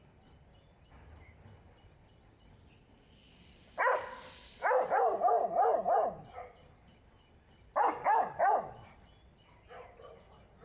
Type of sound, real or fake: real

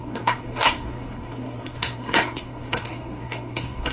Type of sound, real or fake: fake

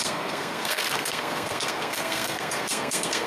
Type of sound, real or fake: fake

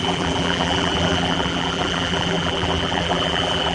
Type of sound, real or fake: fake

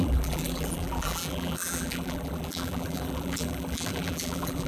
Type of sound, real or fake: fake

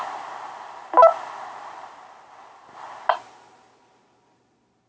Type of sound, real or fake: real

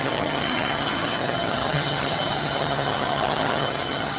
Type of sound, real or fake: fake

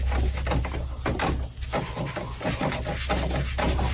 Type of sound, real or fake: real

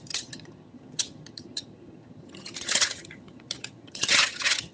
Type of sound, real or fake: fake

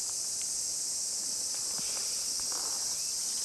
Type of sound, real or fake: real